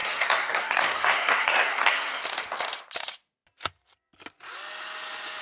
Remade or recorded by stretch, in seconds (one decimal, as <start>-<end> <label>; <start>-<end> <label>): 0.0-2.2 remade; 2.2-5.4 recorded